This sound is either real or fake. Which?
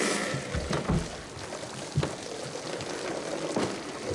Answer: real